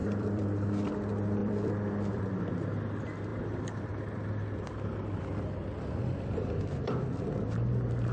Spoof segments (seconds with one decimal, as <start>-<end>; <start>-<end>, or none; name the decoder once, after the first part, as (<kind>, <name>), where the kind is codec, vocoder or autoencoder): 0.0-0.9 (vocoder, BigVGAN v2); 1.4-2.4; 3.3-3.9